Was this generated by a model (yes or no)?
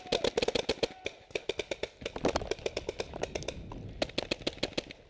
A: no